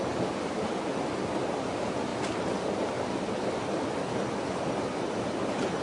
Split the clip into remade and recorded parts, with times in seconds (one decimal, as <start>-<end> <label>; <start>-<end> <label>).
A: 0.0-5.8 recorded